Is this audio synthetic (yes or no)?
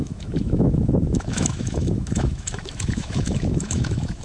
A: yes